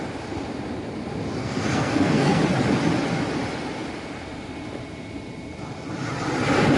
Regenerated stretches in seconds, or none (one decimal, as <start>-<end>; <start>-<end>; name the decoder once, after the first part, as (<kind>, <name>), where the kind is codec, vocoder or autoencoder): 1.4-2.4 (codec, SNAC)